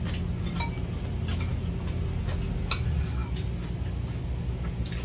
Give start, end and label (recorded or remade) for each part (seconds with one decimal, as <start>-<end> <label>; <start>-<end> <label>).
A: 0.0-5.0 recorded